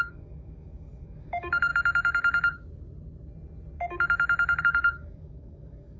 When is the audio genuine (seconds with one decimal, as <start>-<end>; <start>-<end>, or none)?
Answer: 1.7-4.6